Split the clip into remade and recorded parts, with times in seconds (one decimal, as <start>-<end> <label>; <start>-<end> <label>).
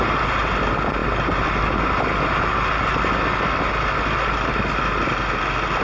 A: 0.0-5.8 recorded